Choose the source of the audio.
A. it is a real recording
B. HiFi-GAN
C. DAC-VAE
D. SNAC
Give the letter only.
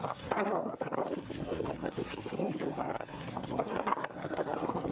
D